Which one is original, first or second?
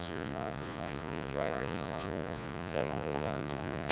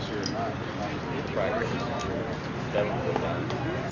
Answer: second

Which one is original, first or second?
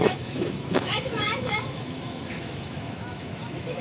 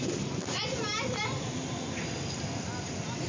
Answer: second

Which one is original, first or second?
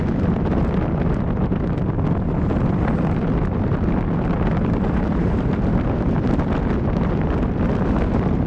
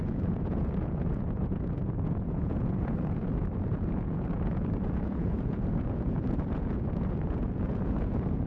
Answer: first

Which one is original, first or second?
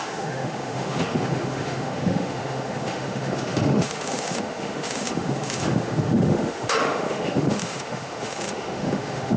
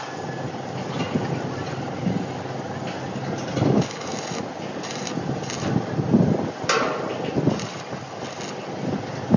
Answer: second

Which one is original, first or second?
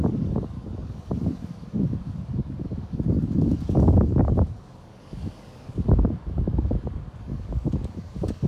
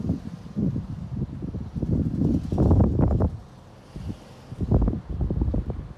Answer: second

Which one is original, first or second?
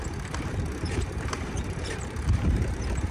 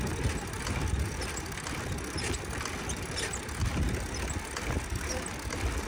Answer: second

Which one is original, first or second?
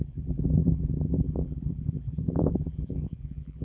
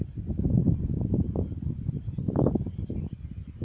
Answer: second